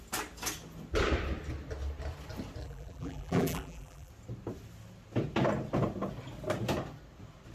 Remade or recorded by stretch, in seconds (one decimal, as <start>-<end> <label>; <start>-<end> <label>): 0.0-2.6 recorded; 2.6-4.1 remade; 4.1-7.5 recorded